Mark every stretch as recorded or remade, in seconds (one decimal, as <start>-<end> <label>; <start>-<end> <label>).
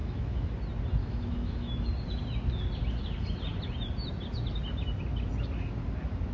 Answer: 0.0-0.5 remade; 0.5-1.0 recorded; 1.0-1.9 remade; 1.9-6.3 recorded